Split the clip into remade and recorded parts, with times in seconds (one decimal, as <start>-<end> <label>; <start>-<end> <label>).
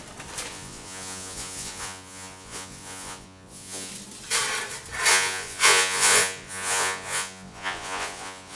0.0-0.5 recorded; 0.5-3.9 remade; 3.9-5.1 recorded; 5.1-8.6 remade